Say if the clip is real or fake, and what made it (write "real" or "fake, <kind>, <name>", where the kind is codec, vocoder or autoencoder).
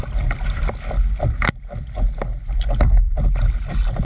real